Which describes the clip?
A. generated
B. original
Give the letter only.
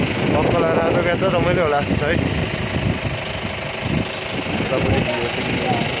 B